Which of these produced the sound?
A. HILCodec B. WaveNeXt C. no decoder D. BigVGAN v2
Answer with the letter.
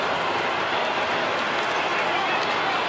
C